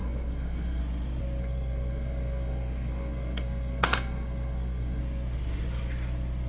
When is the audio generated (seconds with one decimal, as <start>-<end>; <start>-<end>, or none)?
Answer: 0.0-0.8; 1.4-5.0